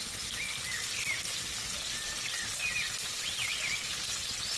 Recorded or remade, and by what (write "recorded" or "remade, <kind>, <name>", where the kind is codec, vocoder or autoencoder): recorded